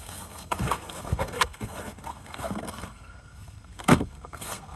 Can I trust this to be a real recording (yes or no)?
no